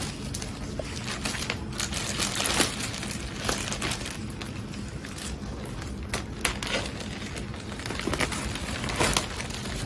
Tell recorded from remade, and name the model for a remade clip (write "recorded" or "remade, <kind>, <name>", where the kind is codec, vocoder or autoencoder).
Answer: recorded